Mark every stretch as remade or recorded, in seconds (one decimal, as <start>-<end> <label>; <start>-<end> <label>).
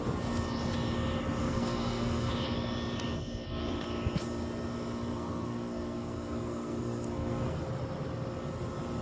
0.0-1.4 recorded; 1.4-2.3 remade; 2.3-5.1 recorded; 5.1-7.6 remade; 7.6-9.0 recorded